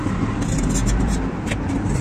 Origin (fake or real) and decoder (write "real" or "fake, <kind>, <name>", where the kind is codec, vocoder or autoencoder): real